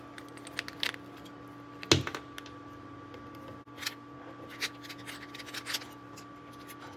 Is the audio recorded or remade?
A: recorded